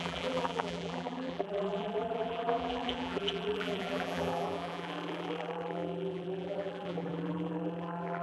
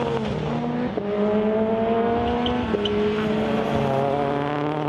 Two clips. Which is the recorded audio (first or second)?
second